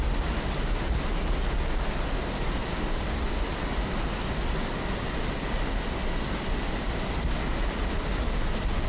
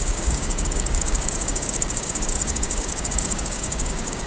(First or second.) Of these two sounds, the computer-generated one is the second